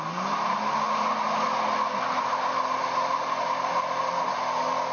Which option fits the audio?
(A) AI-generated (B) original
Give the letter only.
B